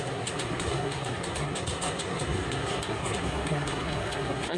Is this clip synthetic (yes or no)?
yes